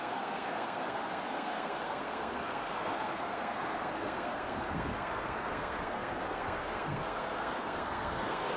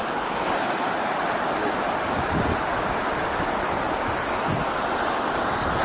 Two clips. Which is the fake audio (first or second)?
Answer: first